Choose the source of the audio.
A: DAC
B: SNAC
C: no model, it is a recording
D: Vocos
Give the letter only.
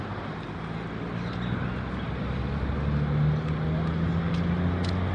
C